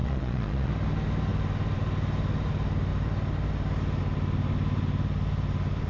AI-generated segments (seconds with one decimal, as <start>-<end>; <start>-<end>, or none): 0.0-0.7